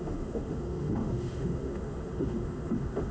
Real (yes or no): no